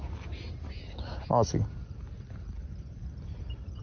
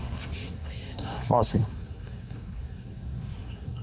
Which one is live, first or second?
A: first